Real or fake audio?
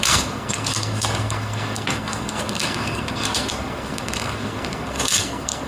fake